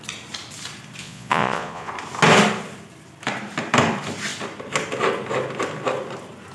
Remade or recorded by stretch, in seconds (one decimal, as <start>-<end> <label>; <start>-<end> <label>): 0.0-1.0 recorded; 1.0-1.9 remade; 1.9-6.5 recorded